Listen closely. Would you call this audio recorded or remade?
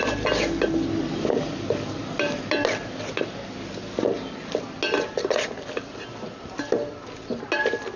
recorded